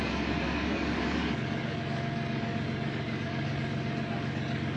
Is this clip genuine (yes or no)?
no